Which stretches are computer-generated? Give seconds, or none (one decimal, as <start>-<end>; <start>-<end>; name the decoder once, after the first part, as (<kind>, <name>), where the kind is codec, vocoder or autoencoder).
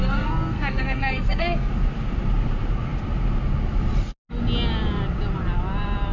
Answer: 0.0-1.7 (codec, SNAC)